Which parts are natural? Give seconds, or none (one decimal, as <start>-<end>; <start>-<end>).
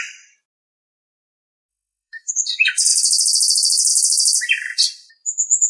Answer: 0.0-1.7; 2.3-5.7